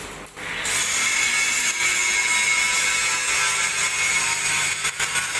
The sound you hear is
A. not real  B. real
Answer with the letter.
B